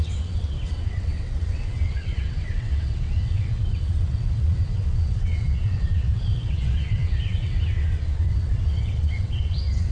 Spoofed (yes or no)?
yes